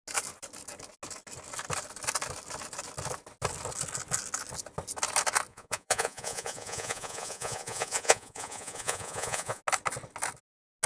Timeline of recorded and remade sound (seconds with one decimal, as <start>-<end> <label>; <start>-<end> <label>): 0.0-5.5 recorded; 5.5-9.6 remade; 9.6-10.9 recorded